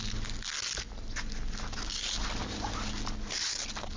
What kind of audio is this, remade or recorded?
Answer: recorded